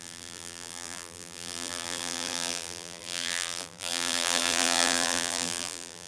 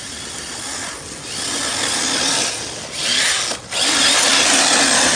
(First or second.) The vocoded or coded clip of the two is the first